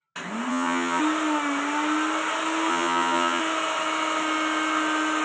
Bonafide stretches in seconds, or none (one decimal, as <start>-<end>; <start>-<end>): 0.0-0.5; 1.0-2.7; 3.4-5.2